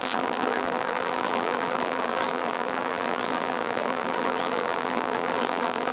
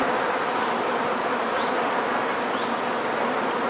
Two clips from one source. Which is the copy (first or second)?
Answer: first